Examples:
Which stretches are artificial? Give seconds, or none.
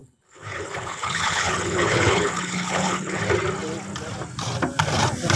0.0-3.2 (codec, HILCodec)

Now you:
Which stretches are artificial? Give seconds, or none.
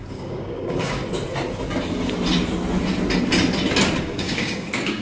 0.0-1.0 (codec, DAC); 4.0-5.0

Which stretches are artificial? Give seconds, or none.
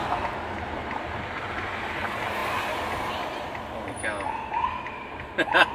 none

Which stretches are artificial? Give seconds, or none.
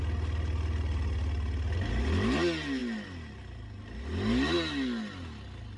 none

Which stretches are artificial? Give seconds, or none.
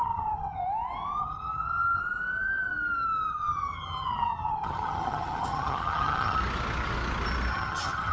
0.0-0.6 (vocoder, HiFi-GAN); 1.2-2.0; 3.3-6.4; 7.5-8.1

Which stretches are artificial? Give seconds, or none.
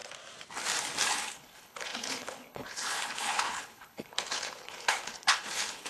1.1-5.9 (codec, HILCodec)